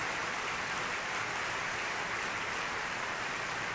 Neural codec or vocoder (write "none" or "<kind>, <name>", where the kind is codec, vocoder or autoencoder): vocoder, BigVGAN v2